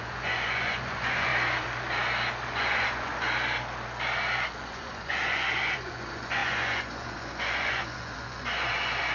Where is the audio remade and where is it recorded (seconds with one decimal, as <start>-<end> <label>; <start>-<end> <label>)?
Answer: 0.0-1.3 remade; 1.3-2.5 recorded; 2.5-3.1 remade; 3.1-4.6 recorded; 4.6-9.1 remade